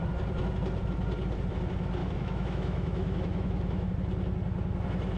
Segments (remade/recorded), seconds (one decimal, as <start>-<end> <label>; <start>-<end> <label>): 0.0-2.0 recorded; 2.0-3.9 remade; 3.9-5.2 recorded